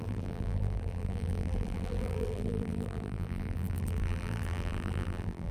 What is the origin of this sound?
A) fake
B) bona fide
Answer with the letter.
A